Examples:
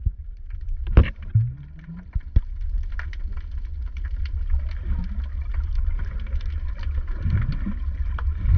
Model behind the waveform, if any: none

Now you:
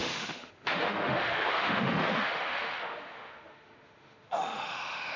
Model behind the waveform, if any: autoencoder, DAC-VAE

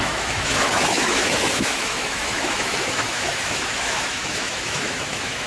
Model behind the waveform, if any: autoencoder, DAC-VAE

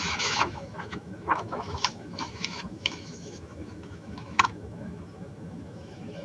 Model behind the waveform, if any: autoencoder, DAC-VAE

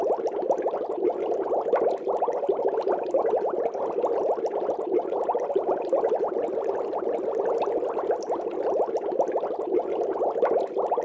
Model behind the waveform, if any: none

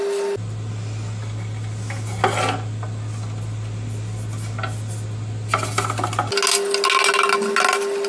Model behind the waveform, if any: none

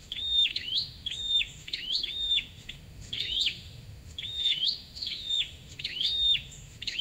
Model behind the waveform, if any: autoencoder, DAC-VAE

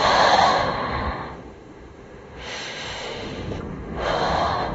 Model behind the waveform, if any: autoencoder, DAC-VAE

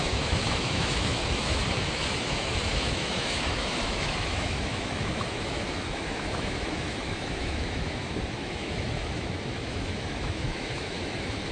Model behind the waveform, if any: autoencoder, DAC-VAE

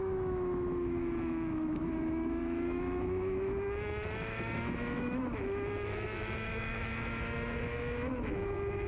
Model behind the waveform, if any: autoencoder, DAC-VAE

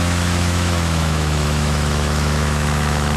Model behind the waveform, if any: autoencoder, DAC-VAE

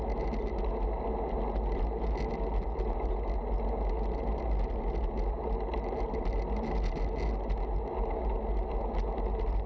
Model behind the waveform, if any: none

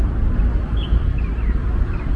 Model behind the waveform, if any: none